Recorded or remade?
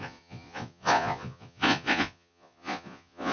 remade